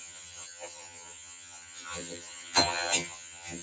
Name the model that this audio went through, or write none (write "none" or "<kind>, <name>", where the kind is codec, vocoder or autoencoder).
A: vocoder, HiFi-GAN